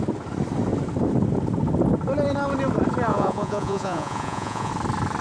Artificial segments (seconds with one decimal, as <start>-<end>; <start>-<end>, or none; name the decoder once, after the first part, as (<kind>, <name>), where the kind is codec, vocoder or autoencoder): 3.1-4.7 (vocoder, Vocos)